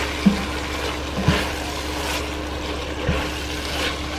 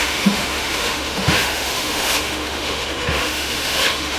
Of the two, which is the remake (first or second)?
second